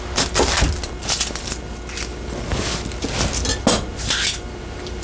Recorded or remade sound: recorded